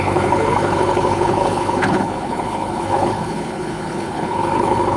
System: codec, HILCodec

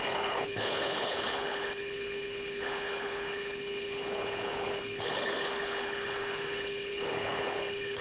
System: codec, HILCodec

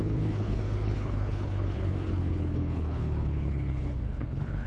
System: codec, HILCodec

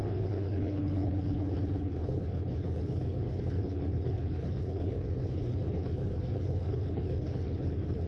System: codec, HILCodec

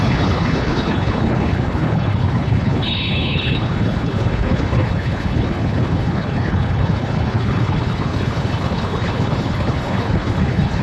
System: codec, HILCodec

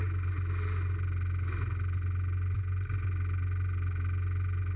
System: none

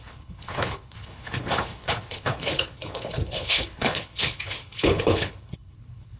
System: codec, HILCodec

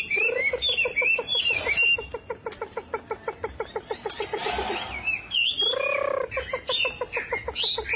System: none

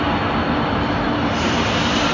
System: none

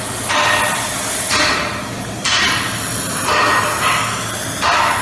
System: none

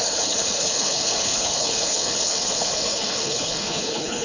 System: codec, HILCodec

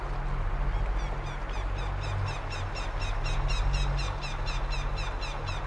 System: none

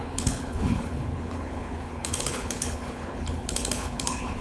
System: codec, HILCodec